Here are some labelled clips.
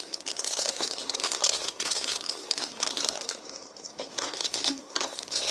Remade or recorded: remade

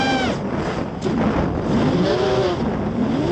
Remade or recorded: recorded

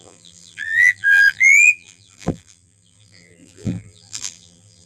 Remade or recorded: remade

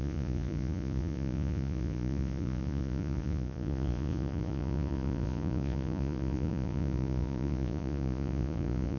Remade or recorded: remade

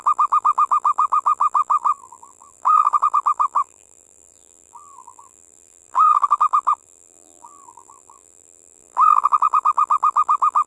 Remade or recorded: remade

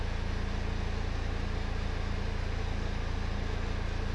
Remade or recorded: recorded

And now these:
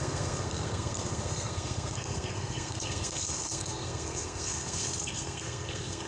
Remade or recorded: remade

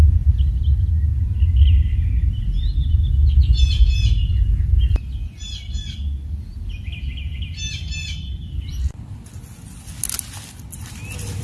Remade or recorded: recorded